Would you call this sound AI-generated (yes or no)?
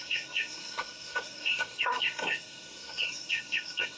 yes